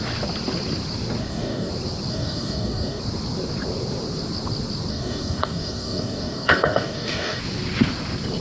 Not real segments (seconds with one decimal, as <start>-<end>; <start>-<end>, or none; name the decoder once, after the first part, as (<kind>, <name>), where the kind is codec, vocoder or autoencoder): 1.2-1.7 (codec, DAC); 2.1-3.0; 4.9-7.4